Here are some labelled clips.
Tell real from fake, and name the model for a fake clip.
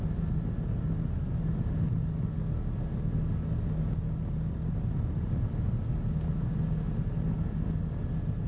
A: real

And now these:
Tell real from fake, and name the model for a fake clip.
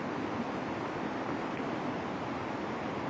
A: real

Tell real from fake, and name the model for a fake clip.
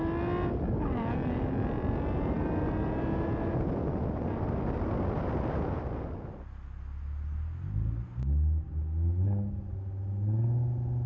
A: real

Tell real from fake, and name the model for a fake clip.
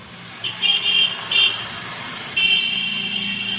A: real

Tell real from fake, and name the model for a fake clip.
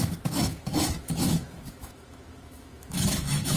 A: fake, autoencoder, DAC-VAE